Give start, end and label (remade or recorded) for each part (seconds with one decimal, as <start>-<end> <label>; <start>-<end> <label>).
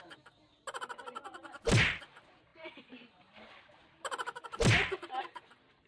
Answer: 0.0-5.9 recorded